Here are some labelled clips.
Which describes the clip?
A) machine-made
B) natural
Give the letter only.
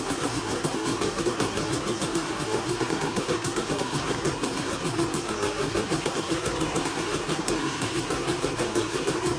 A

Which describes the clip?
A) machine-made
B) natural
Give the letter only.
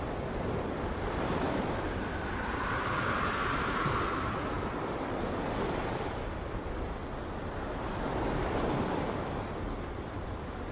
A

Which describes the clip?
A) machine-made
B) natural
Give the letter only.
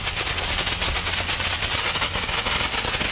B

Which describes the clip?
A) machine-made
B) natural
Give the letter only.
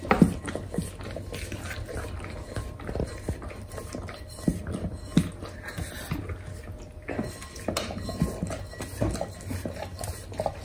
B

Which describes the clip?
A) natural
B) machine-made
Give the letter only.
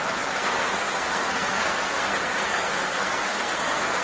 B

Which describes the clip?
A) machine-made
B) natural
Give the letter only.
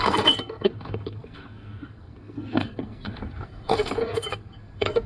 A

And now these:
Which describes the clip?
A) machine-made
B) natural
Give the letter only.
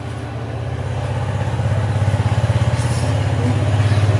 B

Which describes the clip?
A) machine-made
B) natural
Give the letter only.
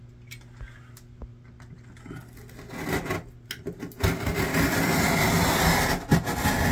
B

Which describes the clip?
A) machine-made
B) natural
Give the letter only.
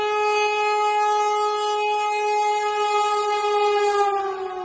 B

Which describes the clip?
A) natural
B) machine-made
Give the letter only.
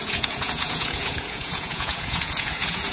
B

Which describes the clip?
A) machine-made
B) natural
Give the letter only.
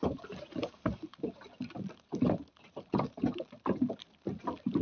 B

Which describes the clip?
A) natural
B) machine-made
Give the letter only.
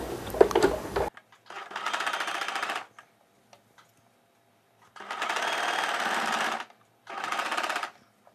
A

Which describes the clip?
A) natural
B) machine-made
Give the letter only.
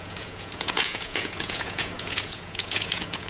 B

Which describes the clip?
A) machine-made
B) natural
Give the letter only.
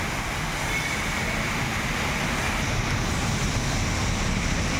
B